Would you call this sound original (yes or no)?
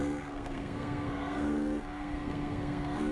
no